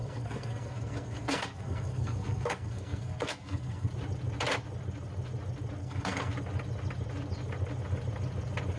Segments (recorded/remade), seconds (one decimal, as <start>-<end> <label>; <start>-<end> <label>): 0.0-3.9 remade; 3.9-5.8 recorded; 5.8-6.3 remade; 6.3-8.8 recorded